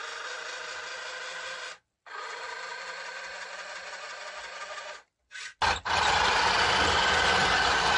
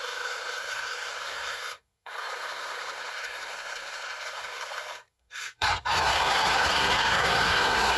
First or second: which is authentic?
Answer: first